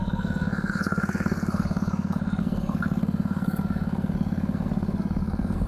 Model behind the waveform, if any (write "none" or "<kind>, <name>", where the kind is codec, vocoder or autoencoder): codec, SNAC